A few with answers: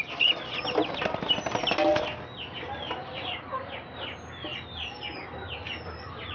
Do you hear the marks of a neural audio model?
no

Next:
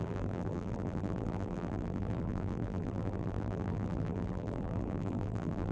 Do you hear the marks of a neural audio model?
yes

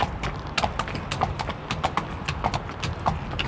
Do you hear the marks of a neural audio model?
no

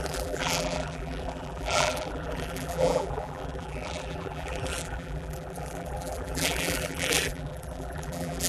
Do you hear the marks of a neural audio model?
yes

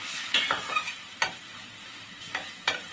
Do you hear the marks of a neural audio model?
no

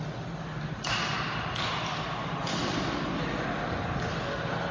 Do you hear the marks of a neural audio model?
no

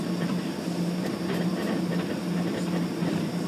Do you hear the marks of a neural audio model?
yes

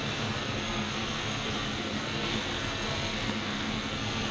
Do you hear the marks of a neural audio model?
yes